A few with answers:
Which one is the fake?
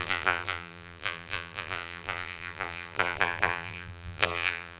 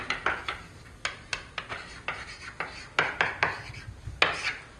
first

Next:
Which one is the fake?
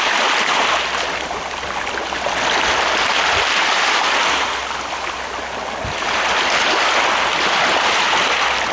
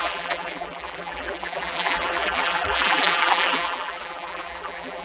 second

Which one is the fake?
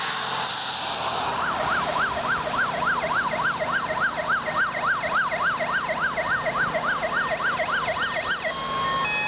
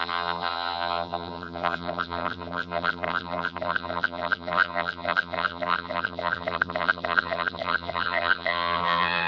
second